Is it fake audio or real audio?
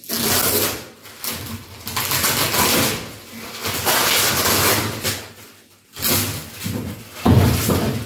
real